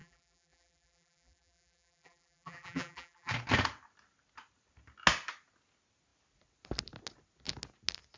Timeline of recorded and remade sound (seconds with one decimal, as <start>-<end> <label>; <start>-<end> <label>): 0.0-3.3 remade; 3.3-8.2 recorded

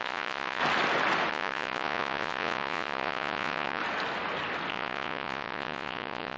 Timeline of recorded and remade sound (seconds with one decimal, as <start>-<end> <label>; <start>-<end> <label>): 0.0-0.6 remade; 0.6-1.3 recorded; 1.3-3.8 remade; 3.8-4.7 recorded; 4.7-6.4 remade

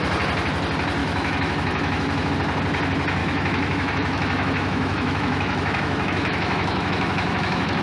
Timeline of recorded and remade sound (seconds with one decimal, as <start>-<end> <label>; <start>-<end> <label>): 0.0-1.0 recorded; 1.0-2.3 remade; 2.3-3.2 recorded; 3.2-7.8 remade

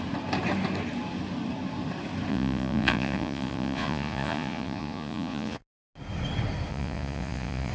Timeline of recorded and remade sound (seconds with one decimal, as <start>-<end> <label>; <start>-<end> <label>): 0.0-2.3 recorded; 2.3-5.6 remade; 5.6-6.7 recorded; 6.7-7.7 remade

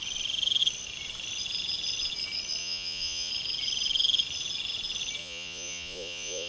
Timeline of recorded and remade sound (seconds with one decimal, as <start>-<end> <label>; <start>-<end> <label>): 0.0-2.6 recorded; 2.6-3.3 remade; 3.3-5.2 recorded; 5.2-6.5 remade

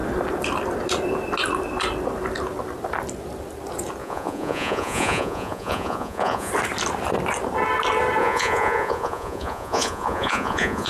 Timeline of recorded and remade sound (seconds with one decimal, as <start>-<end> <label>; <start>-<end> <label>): 0.0-4.0 recorded; 4.0-6.5 remade; 6.5-8.2 recorded; 8.2-10.9 remade